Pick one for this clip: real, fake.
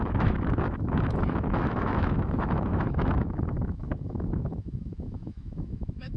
fake